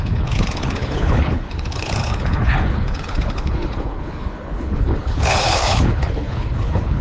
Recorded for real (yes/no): no